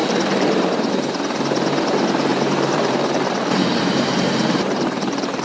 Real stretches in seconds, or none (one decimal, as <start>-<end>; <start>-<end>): 0.9-2.3